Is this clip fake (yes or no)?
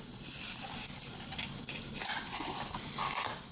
no